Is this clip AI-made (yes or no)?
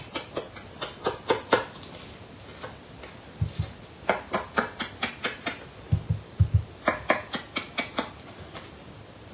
no